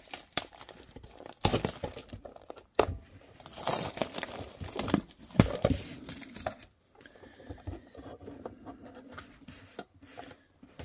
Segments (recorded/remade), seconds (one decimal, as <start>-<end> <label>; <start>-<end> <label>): 0.0-10.8 remade